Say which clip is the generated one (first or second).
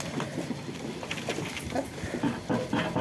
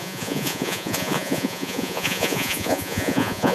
second